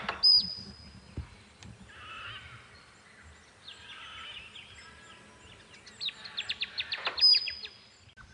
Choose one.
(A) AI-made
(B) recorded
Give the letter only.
B